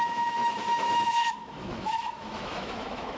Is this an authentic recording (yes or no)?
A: no